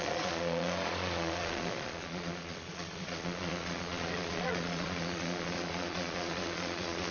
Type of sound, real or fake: fake